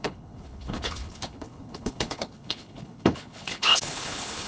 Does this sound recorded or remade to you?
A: remade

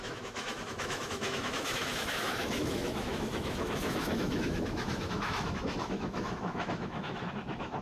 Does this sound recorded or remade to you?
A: remade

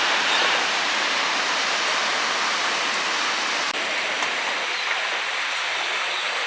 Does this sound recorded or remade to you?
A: recorded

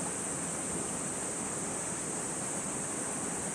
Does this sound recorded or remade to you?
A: recorded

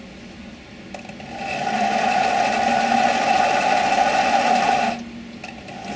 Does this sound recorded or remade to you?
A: recorded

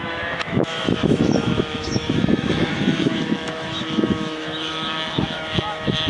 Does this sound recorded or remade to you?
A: remade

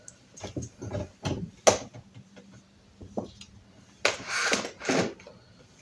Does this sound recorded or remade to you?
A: recorded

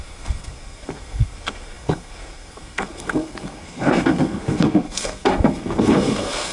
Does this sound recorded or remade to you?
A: remade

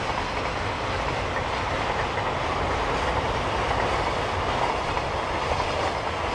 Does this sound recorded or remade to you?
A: recorded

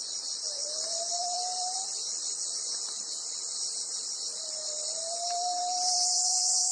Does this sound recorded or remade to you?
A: remade